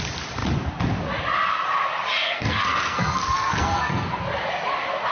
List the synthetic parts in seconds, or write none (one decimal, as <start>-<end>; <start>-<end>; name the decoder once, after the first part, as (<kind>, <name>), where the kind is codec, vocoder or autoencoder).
2.2-4.2 (codec, SNAC)